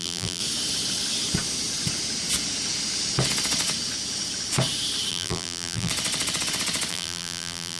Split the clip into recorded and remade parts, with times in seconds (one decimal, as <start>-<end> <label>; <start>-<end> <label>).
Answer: 0.0-0.4 remade; 0.4-5.1 recorded; 5.1-5.9 remade; 5.9-6.9 recorded; 6.9-7.8 remade